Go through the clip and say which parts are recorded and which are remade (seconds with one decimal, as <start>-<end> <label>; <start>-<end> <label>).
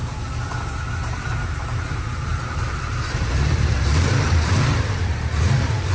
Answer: 0.0-2.3 recorded; 2.3-5.9 remade